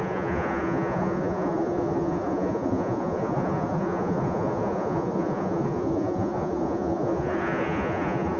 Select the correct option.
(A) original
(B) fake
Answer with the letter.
B